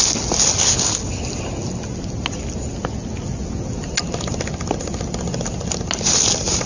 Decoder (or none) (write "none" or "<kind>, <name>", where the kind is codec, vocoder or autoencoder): none